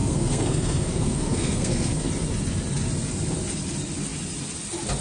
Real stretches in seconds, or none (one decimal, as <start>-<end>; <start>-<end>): 2.1-5.0